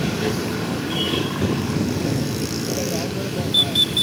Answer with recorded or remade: remade